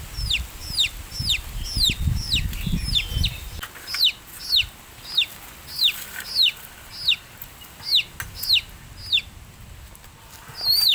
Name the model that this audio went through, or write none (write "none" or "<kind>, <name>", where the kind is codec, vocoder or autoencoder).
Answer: none